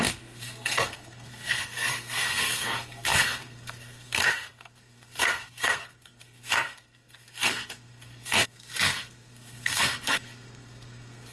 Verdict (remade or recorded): remade